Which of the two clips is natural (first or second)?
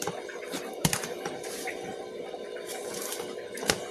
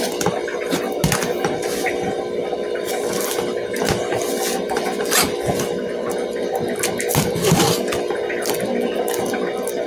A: second